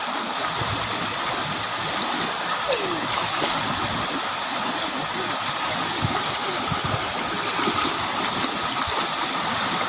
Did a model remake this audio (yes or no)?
no